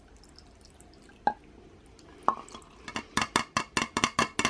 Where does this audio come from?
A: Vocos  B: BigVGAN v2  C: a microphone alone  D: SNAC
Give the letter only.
C